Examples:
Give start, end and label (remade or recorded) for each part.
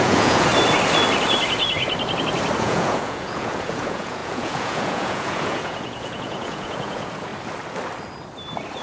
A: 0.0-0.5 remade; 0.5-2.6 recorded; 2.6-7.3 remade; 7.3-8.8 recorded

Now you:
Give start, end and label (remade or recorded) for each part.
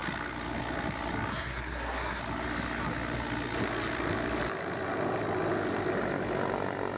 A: 0.0-1.3 recorded; 1.3-2.2 remade; 2.2-7.0 recorded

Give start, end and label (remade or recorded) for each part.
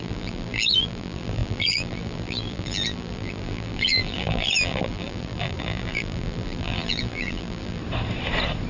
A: 0.0-7.8 remade; 7.8-8.7 recorded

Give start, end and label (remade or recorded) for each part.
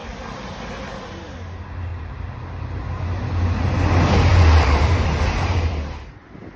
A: 0.0-1.9 recorded; 1.9-2.6 remade; 2.6-4.3 recorded; 4.3-5.7 remade; 5.7-6.6 recorded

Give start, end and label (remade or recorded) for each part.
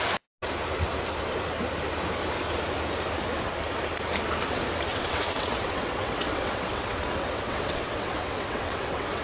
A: 0.0-4.9 recorded; 4.9-9.2 remade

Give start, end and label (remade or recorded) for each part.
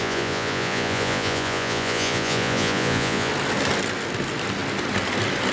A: 0.0-3.3 remade; 3.3-5.5 recorded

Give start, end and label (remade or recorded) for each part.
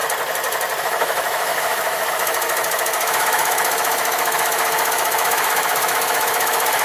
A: 0.0-0.8 recorded; 0.8-6.8 remade